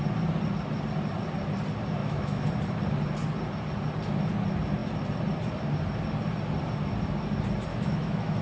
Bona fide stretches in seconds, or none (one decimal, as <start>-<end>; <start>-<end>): 0.0-2.0; 2.5-7.7

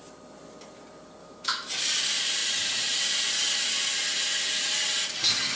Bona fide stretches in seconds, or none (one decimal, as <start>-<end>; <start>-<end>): 0.0-1.2; 1.7-5.5

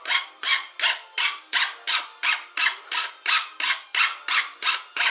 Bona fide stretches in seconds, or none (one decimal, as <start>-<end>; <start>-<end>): 0.0-5.1

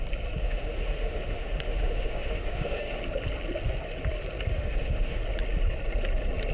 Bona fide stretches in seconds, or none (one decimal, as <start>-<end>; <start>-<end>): 0.0-0.4; 3.0-4.5; 5.2-6.5

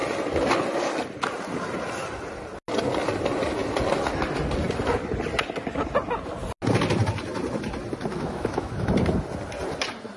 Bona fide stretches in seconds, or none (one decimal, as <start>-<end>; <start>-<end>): 0.0-8.1; 8.9-10.2

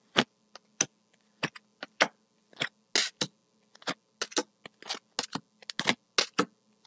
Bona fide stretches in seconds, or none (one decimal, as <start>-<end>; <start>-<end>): 0.0-6.9

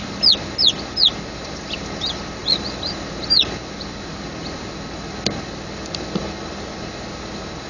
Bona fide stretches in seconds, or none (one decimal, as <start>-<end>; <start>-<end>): 0.0-7.7

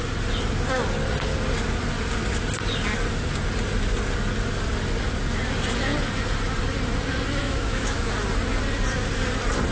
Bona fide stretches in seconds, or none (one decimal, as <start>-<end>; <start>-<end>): 0.0-7.4; 8.1-9.7